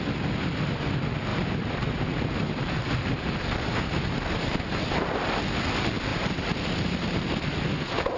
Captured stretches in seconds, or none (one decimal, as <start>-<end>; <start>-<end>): 0.0-1.3; 5.4-6.1; 7.3-8.2